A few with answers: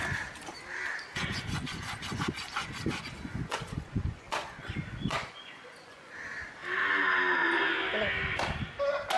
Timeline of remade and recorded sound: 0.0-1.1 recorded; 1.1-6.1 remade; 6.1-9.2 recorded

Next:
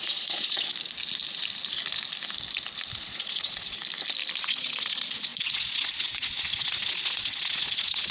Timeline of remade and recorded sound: 0.0-0.7 remade; 0.7-3.0 recorded; 3.0-3.8 remade; 3.8-4.4 recorded; 4.4-8.1 remade

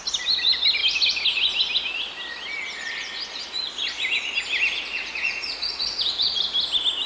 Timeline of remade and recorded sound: 0.0-4.9 recorded; 4.9-6.4 remade; 6.4-7.1 recorded

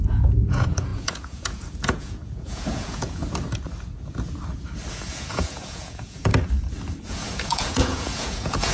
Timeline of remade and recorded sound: 0.0-3.2 remade; 3.2-4.9 recorded; 4.9-6.3 remade; 6.3-7.0 recorded; 7.0-8.7 remade

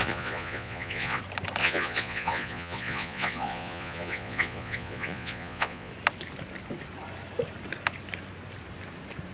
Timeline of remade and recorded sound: 0.0-1.2 remade; 1.2-1.6 recorded; 1.6-5.9 remade; 5.9-9.3 recorded

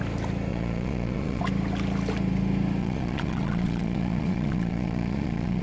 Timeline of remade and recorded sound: 0.0-0.5 recorded; 0.5-1.4 remade; 1.4-2.8 recorded; 2.8-5.6 remade

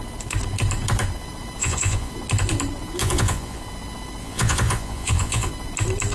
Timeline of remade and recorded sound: 0.0-1.6 recorded; 1.6-2.1 remade; 2.1-3.0 recorded; 3.0-3.6 remade; 3.6-4.2 recorded; 4.2-5.5 remade; 5.5-6.1 recorded

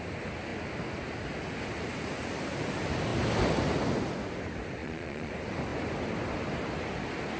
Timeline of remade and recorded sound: 0.0-4.8 recorded; 4.8-5.3 remade; 5.3-7.4 recorded